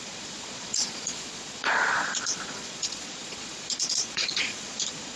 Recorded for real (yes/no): no